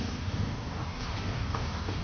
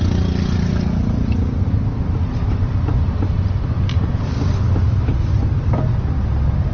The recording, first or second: second